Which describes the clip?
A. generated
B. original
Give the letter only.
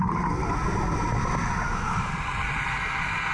B